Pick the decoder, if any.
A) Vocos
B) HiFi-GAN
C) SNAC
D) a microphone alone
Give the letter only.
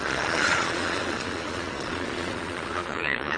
A